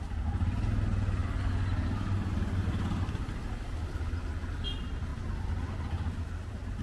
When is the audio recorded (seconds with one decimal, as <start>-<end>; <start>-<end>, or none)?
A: 0.0-6.8